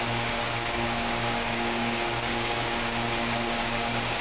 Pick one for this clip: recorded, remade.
remade